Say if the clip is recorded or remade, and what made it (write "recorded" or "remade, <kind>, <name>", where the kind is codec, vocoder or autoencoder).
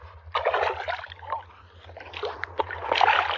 recorded